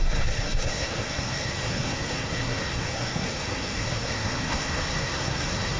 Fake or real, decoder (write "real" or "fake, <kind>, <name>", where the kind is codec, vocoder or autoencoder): fake, codec, SNAC